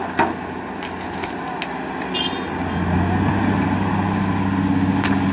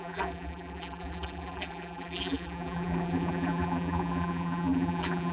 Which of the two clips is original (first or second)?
first